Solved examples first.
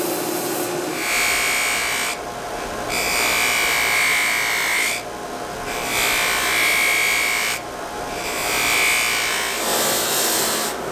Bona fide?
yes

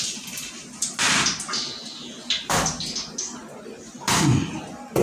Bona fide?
yes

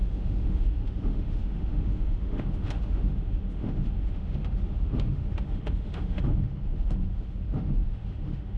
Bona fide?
no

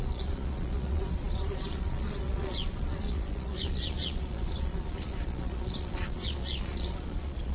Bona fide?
no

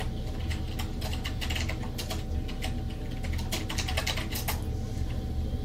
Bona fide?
yes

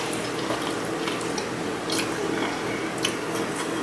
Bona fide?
yes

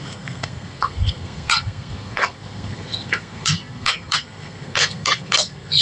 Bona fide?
no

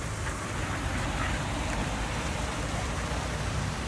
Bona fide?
no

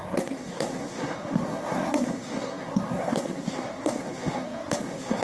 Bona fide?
no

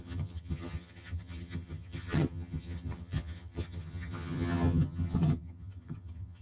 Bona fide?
no